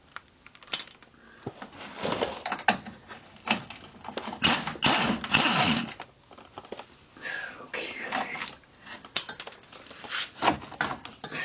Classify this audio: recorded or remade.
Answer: recorded